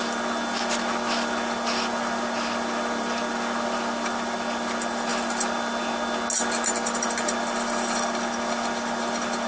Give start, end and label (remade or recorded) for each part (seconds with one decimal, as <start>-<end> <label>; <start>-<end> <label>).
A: 0.0-9.5 recorded